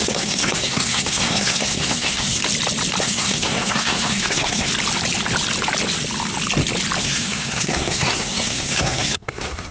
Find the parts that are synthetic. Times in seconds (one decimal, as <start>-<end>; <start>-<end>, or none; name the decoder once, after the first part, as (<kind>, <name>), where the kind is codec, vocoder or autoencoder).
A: 0.0-2.4 (codec, SNAC); 3.0-4.7; 7.0-9.7

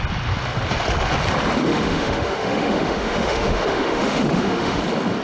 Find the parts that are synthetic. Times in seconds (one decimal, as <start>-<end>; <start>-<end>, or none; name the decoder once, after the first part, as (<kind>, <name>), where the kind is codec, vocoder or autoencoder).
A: 1.7-4.8 (autoencoder, DAC-VAE)

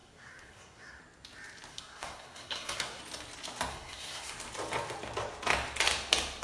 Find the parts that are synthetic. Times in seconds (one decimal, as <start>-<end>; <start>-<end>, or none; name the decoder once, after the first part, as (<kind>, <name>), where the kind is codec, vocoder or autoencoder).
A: 0.0-1.0 (codec, SNAC); 1.7-3.0; 3.7-4.3

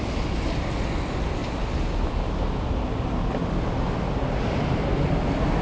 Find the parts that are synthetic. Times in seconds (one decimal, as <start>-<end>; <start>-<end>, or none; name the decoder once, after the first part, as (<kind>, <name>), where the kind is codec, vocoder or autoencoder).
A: none

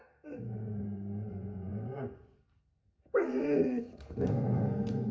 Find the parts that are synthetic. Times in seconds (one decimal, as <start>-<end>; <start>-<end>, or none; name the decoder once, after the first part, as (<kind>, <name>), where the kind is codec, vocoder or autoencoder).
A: 0.0-5.1 (codec, SNAC)

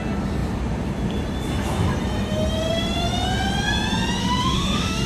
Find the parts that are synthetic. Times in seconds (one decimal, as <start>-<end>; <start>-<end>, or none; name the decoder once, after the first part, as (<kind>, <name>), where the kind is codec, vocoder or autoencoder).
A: 4.2-5.1 (autoencoder, DAC-VAE)

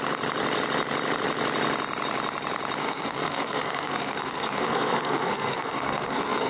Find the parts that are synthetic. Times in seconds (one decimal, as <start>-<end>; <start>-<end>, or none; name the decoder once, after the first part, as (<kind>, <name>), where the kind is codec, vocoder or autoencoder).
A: 2.8-6.5 (codec, SNAC)

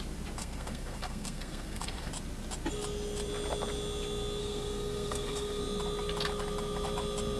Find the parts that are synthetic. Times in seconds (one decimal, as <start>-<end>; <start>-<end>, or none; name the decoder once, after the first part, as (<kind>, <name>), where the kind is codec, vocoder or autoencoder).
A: 0.4-2.1 (codec, SNAC); 4.4-5.6